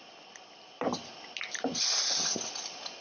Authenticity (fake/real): real